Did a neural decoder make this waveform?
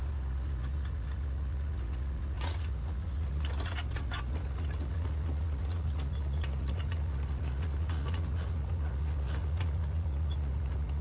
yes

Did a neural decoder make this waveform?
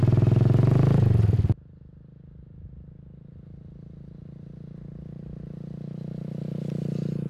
no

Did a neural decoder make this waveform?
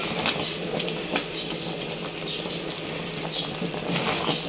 no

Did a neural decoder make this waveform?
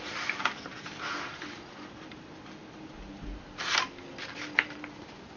no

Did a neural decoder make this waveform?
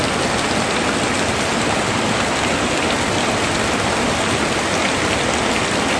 no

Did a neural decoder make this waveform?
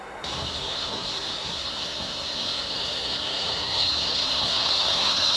yes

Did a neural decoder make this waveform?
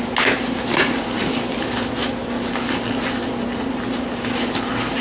no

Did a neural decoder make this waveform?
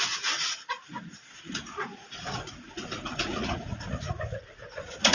yes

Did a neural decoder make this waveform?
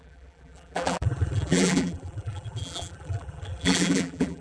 yes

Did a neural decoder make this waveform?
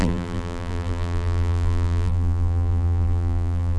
yes